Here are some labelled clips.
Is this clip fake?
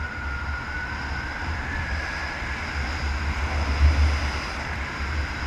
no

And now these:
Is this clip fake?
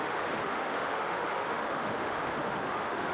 yes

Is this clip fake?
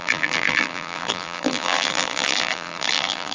yes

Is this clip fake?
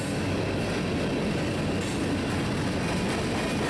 no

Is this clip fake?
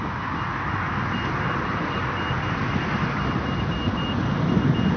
no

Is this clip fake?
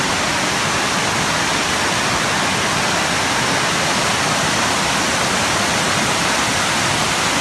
no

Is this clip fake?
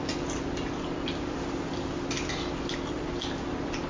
no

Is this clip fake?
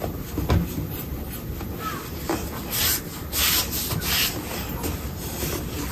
no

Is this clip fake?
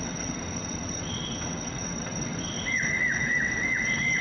yes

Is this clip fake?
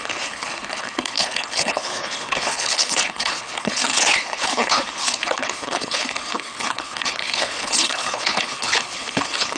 yes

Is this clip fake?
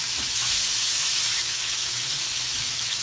yes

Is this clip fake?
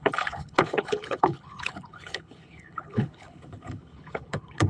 yes